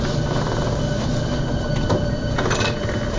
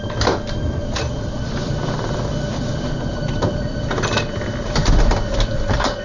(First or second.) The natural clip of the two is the first